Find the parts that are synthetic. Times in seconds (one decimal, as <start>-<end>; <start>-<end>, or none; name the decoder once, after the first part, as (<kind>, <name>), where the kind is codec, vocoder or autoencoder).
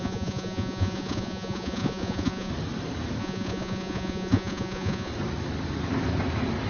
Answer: 0.0-2.5 (vocoder, Vocos); 3.2-5.1